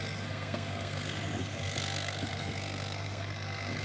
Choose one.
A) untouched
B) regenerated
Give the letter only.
B